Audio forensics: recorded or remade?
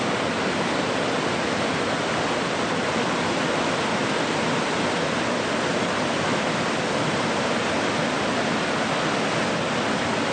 recorded